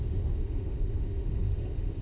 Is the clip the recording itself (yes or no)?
no